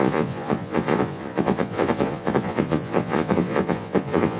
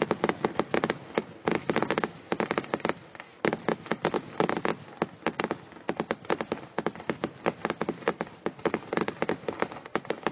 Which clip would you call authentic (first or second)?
second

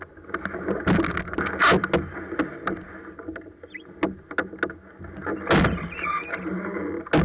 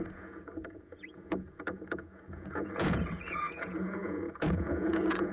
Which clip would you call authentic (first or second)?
first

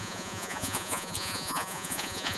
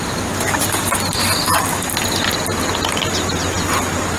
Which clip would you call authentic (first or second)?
second